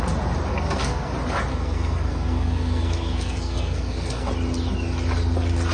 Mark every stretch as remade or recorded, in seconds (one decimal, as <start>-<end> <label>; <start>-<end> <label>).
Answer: 0.0-0.5 recorded; 0.5-1.1 remade; 1.1-1.5 recorded; 1.5-4.3 remade; 4.3-5.7 recorded